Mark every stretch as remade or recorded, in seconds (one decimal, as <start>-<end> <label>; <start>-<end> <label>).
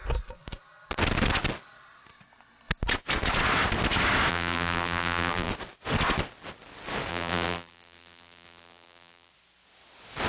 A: 0.0-4.3 recorded; 4.3-5.5 remade; 5.5-7.1 recorded; 7.1-9.3 remade; 9.3-10.3 recorded